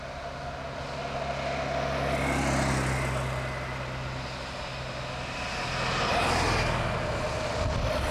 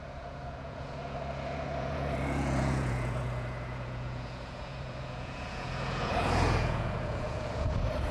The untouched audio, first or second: first